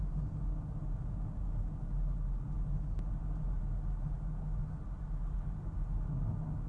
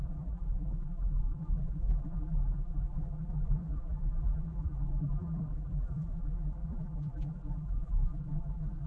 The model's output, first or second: second